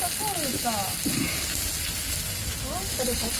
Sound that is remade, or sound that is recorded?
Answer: recorded